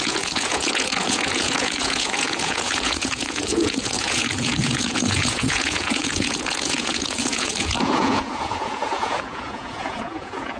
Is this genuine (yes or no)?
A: no